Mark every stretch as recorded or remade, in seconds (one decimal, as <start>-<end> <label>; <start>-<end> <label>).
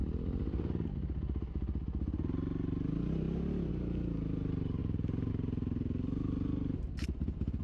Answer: 0.0-7.6 recorded